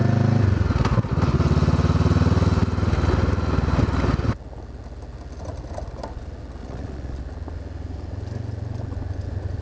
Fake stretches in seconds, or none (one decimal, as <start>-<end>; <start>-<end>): 6.6-7.2

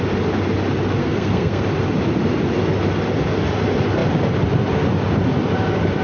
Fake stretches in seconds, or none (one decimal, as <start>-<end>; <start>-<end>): 1.0-1.6

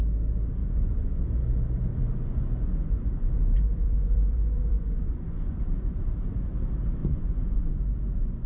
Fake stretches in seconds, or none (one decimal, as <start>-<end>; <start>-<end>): 0.6-1.3; 1.9-5.6; 7.0-7.8

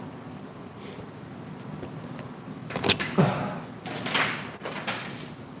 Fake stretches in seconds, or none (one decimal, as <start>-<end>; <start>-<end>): none

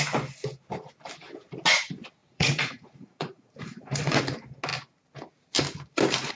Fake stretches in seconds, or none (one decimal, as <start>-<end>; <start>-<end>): 2.2-4.2